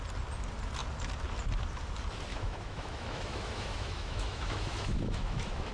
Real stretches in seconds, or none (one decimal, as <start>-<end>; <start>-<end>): 0.0-2.3